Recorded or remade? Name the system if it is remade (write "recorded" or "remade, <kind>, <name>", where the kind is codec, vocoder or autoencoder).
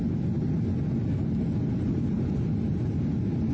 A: recorded